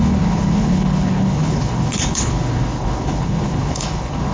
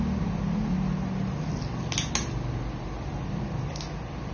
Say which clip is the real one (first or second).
second